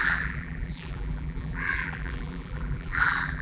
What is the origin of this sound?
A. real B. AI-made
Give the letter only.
B